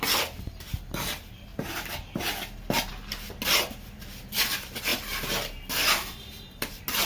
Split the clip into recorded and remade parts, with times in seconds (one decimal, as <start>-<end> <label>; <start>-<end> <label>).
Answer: 0.0-7.0 recorded